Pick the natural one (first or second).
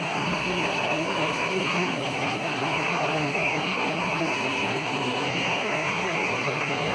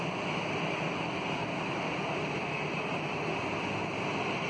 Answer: second